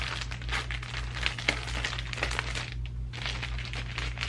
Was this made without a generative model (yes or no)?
yes